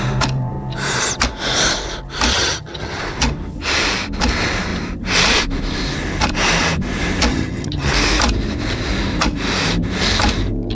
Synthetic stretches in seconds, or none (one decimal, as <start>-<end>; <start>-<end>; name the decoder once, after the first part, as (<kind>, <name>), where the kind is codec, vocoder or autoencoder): 2.3-3.0 (vocoder, HiFi-GAN); 7.3-7.9